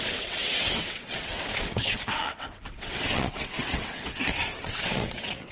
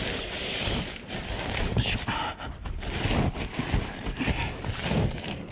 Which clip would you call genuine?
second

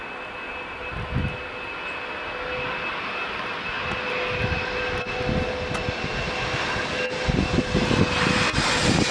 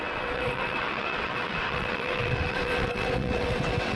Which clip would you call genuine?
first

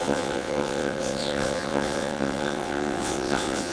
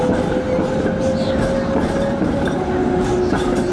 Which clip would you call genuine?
second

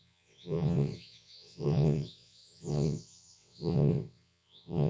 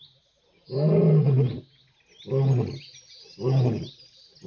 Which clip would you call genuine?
second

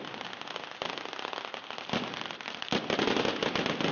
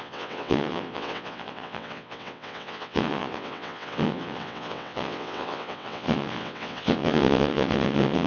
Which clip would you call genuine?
first